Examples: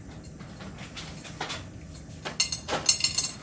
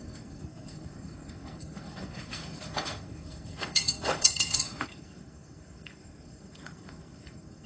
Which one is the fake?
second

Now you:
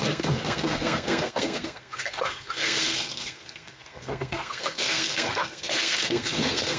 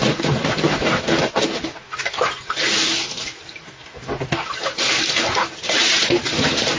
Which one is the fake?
first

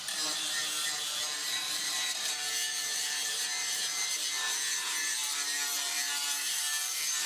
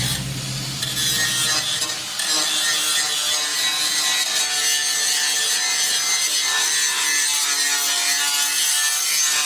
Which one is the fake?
first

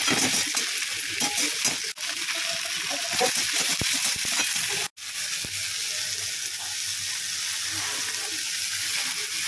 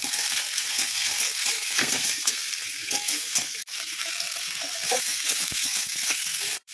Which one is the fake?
second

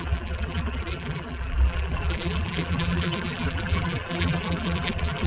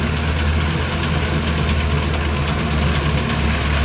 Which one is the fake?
first